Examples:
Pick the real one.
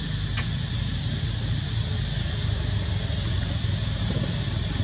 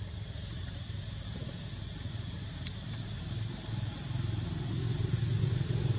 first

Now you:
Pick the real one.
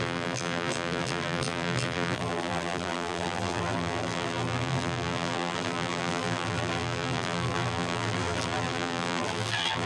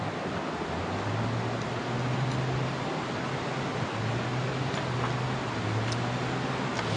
second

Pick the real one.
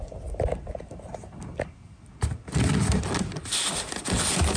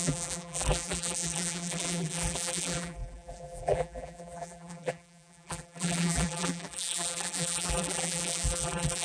first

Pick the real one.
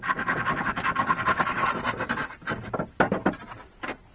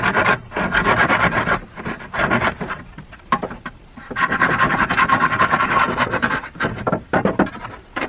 first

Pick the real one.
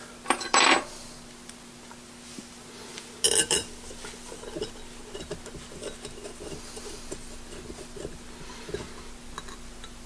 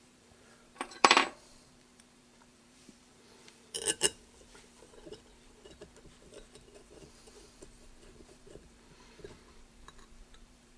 first